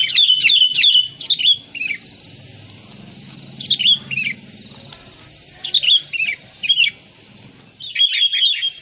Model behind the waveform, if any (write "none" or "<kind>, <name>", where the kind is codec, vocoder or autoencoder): none